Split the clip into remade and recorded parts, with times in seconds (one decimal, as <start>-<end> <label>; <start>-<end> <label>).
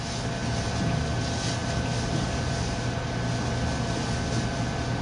0.0-5.0 recorded